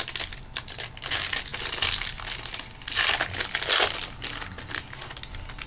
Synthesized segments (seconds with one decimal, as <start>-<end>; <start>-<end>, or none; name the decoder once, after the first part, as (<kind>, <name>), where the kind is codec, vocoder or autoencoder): none